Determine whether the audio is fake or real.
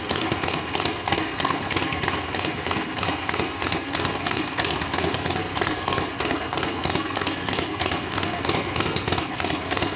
fake